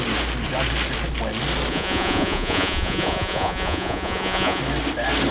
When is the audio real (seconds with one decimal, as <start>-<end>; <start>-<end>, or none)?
0.0-1.7; 4.6-5.3